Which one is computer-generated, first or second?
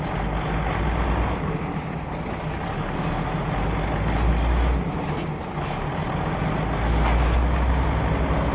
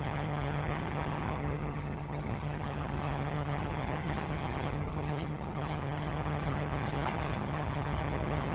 second